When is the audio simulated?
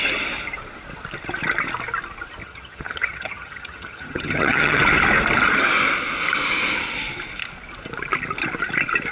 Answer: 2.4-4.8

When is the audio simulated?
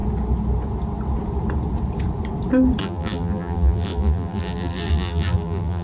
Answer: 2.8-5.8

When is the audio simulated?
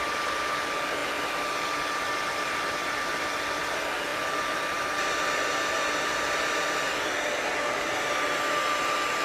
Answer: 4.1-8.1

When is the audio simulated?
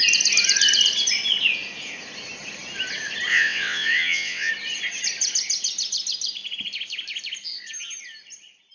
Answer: 3.3-4.5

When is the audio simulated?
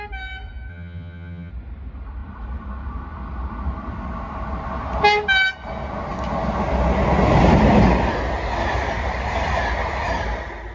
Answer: 0.7-1.5